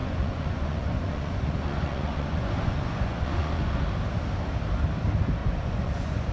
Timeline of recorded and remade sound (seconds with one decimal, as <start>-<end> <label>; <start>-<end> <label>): 0.0-3.8 remade; 3.8-5.4 recorded; 5.4-6.3 remade